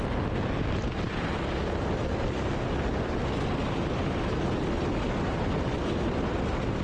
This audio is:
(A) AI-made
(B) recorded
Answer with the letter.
B